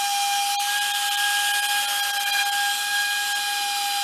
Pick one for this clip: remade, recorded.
recorded